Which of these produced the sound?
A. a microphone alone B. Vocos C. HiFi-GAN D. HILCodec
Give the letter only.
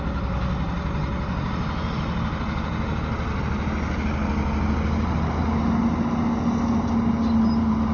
A